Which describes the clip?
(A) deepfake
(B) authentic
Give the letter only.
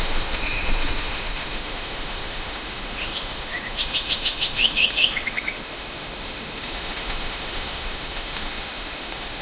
A